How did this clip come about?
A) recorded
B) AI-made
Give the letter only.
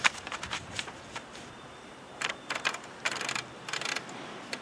B